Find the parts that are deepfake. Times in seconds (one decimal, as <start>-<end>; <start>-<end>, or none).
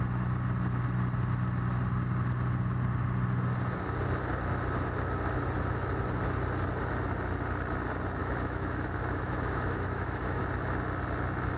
8.2-10.4